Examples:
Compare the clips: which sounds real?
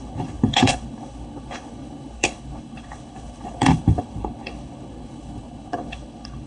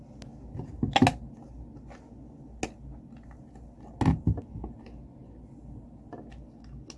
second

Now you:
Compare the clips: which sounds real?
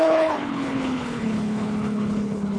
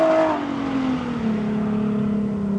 second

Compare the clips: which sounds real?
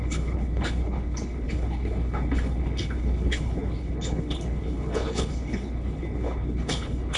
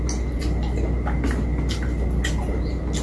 second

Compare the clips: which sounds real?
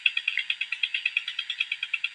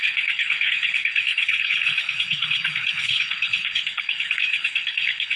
first